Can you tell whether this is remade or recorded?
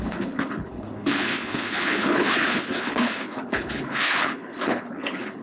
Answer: remade